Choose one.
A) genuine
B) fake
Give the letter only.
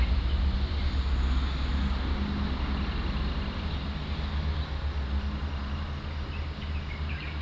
A